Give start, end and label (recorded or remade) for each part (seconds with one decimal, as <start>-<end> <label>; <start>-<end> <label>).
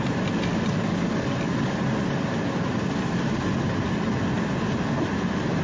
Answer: 0.0-5.6 recorded